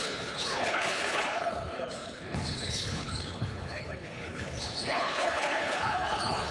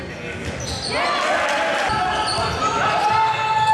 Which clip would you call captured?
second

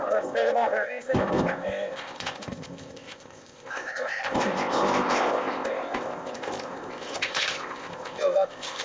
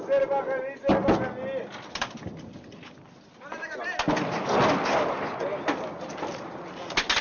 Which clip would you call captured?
second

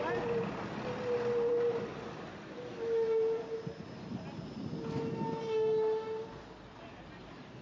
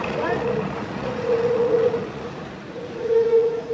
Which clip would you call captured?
first